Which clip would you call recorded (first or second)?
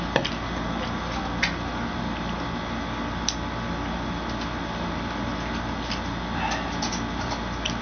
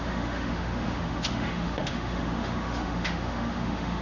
first